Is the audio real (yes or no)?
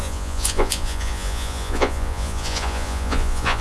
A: no